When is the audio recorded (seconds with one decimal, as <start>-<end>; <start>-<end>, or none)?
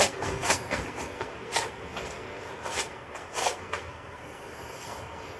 none